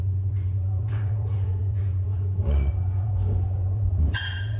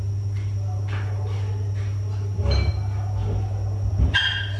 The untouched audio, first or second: second